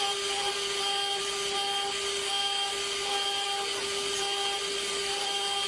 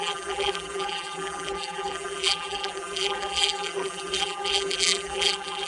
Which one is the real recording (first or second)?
first